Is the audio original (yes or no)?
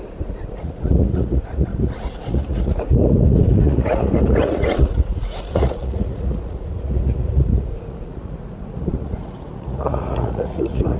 no